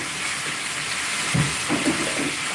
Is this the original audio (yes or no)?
yes